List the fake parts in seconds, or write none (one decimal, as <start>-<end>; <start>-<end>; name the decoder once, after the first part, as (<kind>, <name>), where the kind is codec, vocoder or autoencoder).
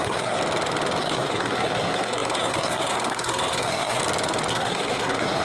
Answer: 0.0-0.4 (codec, SNAC); 1.0-4.0; 4.5-5.4